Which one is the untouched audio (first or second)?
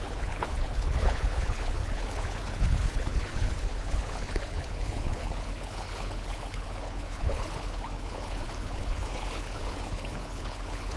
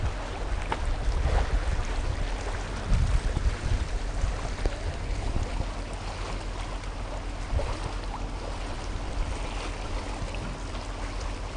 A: second